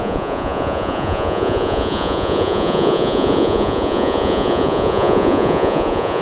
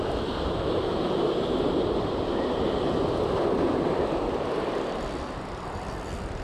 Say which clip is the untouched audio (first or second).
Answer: second